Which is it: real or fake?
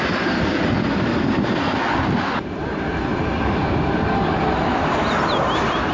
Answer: real